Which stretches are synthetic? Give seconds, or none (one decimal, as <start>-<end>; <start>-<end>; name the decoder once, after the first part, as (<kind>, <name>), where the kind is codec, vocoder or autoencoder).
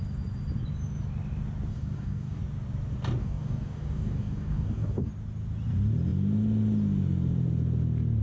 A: 1.7-2.4 (codec, DAC); 3.2-5.1